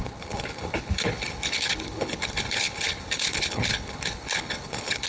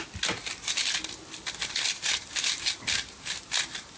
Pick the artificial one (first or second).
first